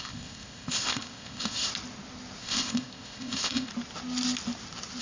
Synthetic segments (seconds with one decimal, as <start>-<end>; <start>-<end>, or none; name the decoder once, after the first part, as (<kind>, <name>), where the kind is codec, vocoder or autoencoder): 0.0-1.7 (codec, ZipCodec); 2.4-3.7